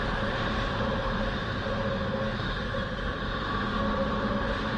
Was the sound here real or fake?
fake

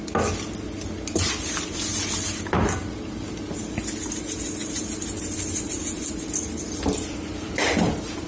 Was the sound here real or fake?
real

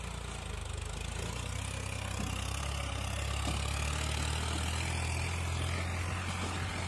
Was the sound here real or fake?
real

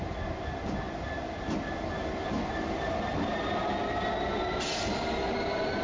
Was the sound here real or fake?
real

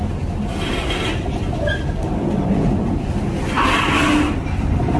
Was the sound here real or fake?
real